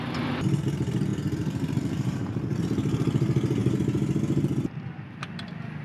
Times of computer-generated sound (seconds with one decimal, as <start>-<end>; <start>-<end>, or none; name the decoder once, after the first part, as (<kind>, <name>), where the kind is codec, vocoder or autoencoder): 1.1-2.6 (vocoder, BigVGAN v2)